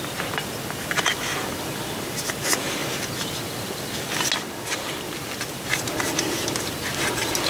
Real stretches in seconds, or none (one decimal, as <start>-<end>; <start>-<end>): 0.0-7.5